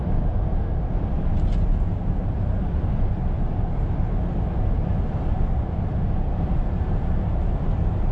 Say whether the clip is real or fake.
real